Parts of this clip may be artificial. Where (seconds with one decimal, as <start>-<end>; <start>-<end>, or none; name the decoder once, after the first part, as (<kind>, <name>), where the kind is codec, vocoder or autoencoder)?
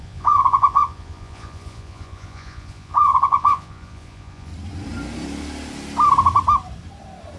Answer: 0.0-4.5 (vocoder, Vocos)